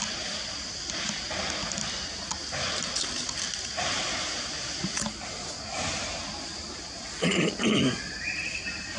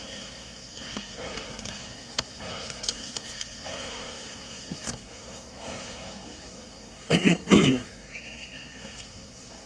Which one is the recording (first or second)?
first